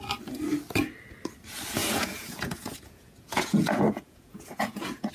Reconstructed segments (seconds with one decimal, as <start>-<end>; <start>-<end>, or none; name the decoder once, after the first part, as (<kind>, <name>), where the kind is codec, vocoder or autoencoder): 1.8-5.1 (vocoder, Vocos)